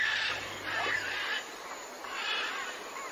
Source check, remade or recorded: recorded